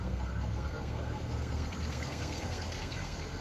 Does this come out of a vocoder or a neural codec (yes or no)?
yes